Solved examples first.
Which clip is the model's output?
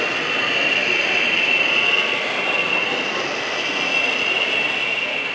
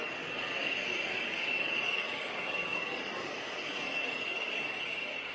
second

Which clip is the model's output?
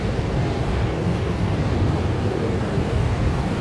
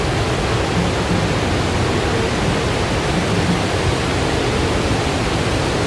first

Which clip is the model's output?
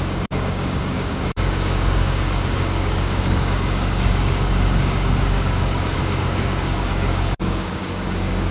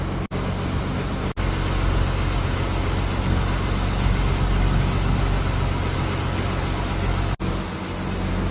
first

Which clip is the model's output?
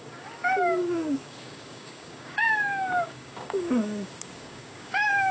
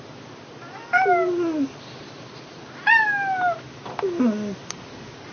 first